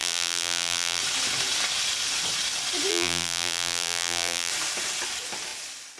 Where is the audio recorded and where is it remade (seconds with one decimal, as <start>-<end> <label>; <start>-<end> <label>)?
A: 0.0-1.0 remade; 1.0-2.9 recorded; 2.9-4.5 remade; 4.5-6.0 recorded

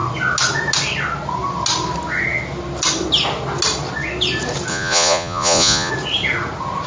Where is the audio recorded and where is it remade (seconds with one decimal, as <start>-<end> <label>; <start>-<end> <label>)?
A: 0.0-4.7 recorded; 4.7-5.9 remade; 5.9-6.9 recorded

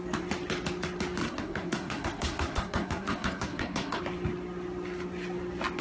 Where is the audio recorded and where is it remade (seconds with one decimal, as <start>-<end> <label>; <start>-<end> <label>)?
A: 0.0-1.2 recorded; 1.2-4.0 remade; 4.0-5.8 recorded

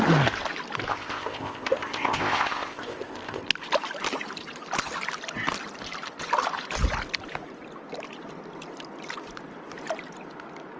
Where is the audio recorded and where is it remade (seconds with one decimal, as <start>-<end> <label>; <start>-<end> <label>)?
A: 0.0-0.9 recorded; 0.9-3.4 remade; 3.4-10.8 recorded

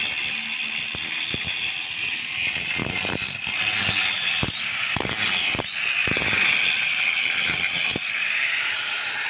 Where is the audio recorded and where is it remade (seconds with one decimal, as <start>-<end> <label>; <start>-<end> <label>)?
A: 0.0-9.3 recorded